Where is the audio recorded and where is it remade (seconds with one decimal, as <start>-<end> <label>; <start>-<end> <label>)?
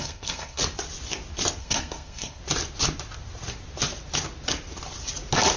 0.0-0.6 remade; 0.6-1.6 recorded; 1.6-2.4 remade; 2.4-5.6 recorded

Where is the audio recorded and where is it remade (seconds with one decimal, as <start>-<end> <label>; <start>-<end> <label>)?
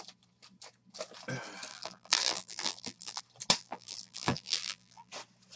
0.0-1.7 recorded; 1.7-3.2 remade; 3.2-3.6 recorded; 3.6-5.1 remade; 5.1-5.6 recorded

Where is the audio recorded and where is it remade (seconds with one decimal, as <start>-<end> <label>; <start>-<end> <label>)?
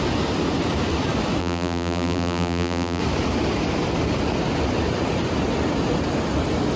0.0-1.4 recorded; 1.4-3.0 remade; 3.0-6.8 recorded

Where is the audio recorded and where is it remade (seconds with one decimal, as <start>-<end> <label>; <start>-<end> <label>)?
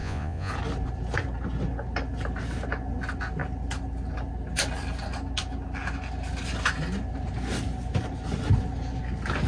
0.0-0.5 remade; 0.5-9.5 recorded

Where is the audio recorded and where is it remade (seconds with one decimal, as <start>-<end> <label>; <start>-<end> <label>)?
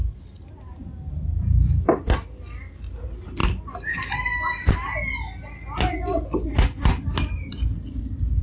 0.0-8.4 recorded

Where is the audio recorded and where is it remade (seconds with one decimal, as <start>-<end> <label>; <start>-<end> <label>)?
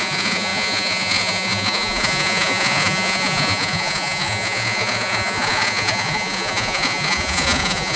0.0-8.0 remade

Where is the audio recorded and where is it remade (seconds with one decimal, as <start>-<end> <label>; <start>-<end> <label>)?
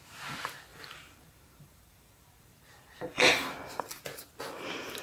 0.0-0.7 recorded; 0.7-3.7 remade; 3.7-5.0 recorded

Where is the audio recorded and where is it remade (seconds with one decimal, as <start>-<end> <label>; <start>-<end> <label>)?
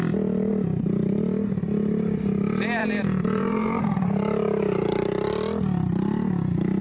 0.0-2.8 recorded; 2.8-3.8 remade; 3.8-6.8 recorded